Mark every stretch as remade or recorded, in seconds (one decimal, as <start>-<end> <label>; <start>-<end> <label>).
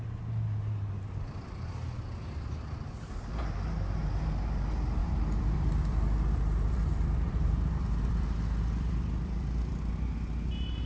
0.0-5.0 recorded; 5.0-9.9 remade; 9.9-10.9 recorded